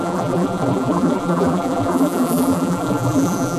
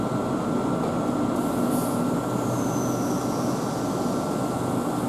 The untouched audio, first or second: second